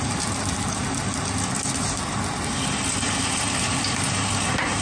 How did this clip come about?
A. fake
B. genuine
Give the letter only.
B